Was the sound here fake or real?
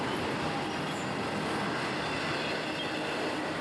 real